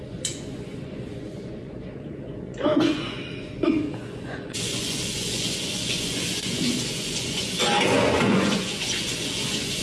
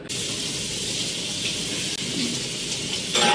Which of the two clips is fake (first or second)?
first